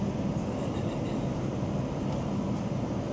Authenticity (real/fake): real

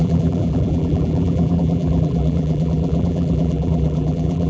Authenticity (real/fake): fake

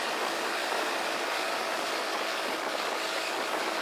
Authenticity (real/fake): fake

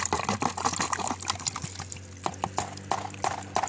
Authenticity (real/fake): real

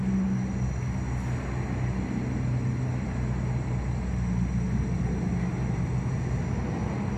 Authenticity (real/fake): real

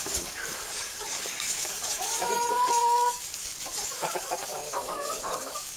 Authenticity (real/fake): fake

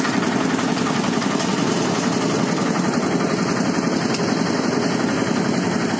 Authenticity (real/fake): real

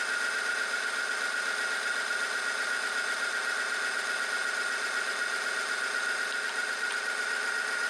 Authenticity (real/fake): real